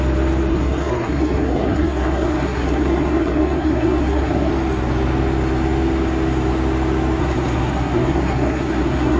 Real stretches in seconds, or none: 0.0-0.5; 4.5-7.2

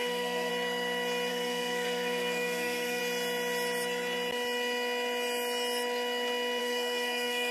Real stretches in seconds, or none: 0.5-1.3; 3.0-6.6

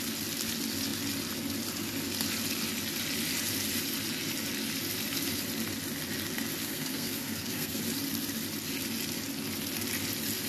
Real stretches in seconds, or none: 0.0-6.7; 7.8-10.5